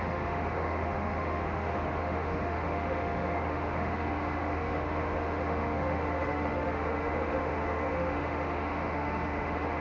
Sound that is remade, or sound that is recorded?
remade